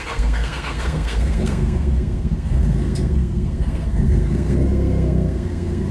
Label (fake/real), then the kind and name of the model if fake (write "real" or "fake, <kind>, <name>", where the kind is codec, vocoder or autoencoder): fake, codec, SNAC